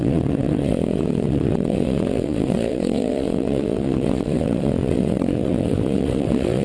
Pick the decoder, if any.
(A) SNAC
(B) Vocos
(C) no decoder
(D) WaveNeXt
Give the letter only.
D